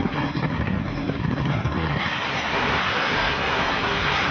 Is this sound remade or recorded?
remade